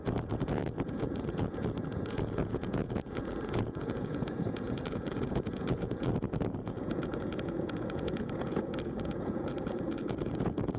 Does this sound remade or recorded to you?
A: remade